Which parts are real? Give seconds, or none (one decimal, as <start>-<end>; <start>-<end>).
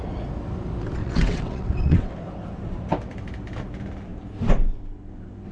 0.0-1.0; 2.1-5.5